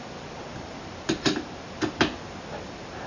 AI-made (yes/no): no